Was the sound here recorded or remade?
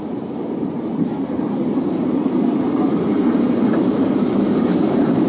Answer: remade